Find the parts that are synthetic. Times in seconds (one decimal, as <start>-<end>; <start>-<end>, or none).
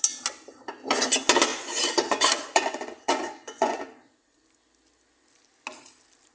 1.5-3.8